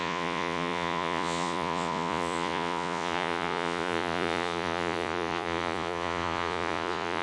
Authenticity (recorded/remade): remade